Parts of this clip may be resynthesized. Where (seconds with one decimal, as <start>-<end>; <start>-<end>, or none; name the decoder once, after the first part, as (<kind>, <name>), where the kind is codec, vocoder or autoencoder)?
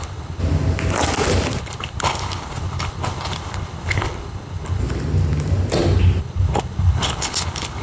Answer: 0.0-0.4 (codec, HILCodec); 1.6-4.8; 6.2-7.8